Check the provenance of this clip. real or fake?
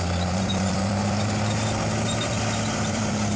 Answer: fake